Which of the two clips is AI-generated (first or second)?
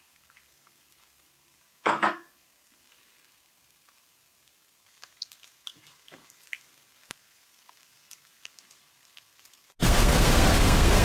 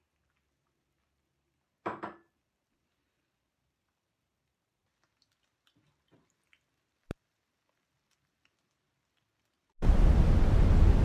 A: first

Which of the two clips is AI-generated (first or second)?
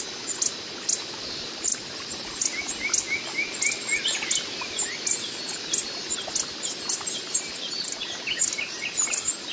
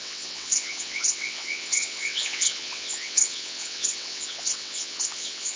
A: second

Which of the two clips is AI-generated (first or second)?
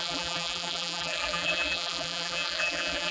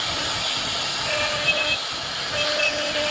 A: first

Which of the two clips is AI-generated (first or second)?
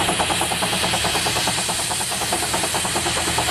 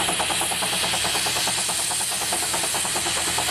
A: first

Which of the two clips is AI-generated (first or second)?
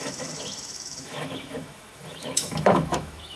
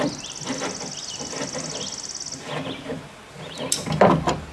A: first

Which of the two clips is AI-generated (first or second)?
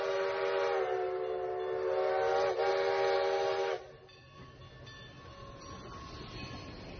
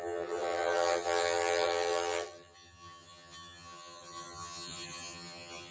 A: second